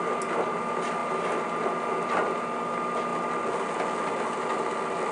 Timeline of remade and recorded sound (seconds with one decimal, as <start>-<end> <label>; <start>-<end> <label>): 0.0-5.1 recorded